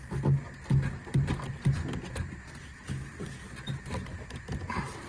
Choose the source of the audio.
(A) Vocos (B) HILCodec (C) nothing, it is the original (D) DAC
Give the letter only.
C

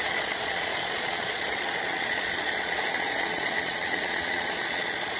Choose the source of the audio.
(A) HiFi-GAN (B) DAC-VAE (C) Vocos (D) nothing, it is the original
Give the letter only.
C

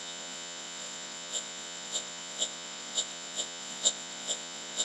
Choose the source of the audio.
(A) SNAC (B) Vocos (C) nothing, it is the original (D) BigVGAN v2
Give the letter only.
B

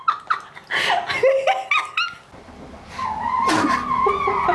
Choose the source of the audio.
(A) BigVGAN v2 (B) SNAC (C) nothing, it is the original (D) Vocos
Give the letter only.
C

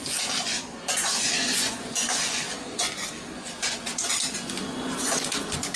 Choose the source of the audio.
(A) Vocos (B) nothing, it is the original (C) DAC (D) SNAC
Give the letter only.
A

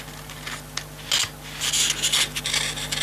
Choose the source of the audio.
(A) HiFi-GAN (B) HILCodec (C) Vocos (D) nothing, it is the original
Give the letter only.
D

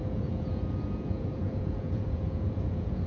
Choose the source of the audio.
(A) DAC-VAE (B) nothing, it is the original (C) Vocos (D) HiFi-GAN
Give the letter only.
C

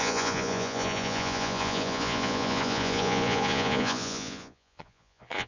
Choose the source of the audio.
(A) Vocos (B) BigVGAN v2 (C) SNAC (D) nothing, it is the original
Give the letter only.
A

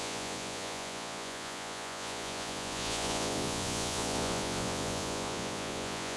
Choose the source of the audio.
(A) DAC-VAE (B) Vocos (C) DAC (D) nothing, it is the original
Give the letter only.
B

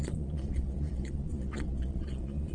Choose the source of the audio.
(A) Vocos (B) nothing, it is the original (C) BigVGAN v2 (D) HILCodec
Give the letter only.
A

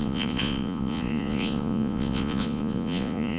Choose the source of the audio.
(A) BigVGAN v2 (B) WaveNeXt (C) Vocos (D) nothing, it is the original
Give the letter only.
C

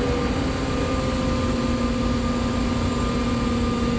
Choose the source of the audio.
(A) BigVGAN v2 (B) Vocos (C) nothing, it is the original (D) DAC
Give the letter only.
C